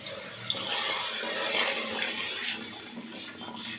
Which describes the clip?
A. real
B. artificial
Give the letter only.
A